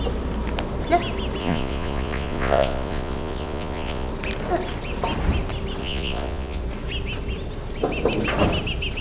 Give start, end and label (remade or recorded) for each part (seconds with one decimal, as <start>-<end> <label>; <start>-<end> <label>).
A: 0.0-1.4 recorded; 1.4-4.1 remade; 4.1-5.8 recorded; 5.8-6.6 remade; 6.6-9.0 recorded